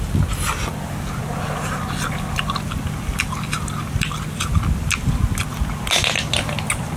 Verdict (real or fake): real